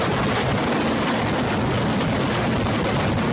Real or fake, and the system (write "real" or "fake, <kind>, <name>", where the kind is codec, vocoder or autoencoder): real